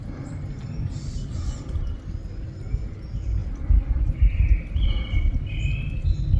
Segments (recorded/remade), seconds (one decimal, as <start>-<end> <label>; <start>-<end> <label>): 0.0-6.4 recorded